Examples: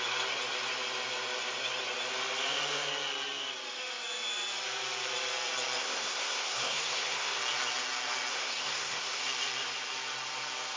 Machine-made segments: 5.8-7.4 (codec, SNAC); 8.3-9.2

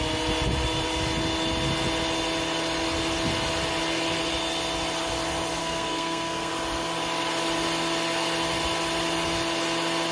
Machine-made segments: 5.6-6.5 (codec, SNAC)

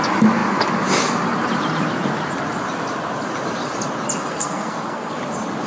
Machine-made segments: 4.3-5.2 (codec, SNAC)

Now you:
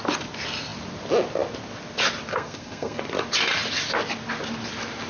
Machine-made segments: 2.3-3.0 (codec, SNAC)

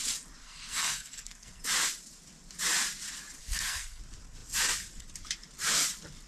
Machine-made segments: 0.4-1.6 (codec, SNAC); 3.4-4.0